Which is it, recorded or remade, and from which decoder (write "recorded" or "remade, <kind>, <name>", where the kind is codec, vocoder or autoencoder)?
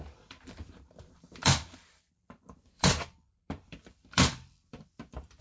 remade, vocoder, BigVGAN v2